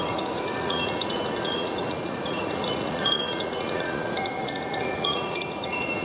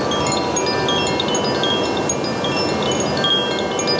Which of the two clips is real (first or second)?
second